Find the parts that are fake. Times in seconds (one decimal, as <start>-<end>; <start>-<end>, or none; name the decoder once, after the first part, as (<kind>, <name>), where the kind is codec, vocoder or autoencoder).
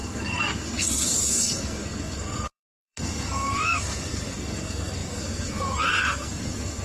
0.0-6.8 (codec, SNAC)